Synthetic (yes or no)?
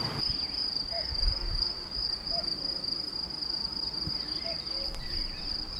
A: no